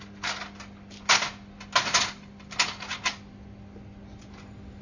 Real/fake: real